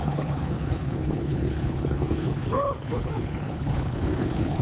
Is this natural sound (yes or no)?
no